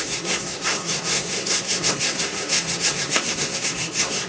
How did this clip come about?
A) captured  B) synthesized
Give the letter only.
B